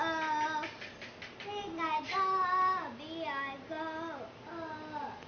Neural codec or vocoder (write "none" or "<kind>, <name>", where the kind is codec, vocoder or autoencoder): none